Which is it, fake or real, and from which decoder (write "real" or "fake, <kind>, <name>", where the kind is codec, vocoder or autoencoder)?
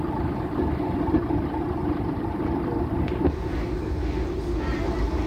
real